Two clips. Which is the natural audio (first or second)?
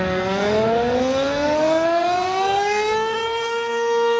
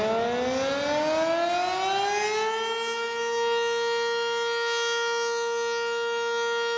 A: second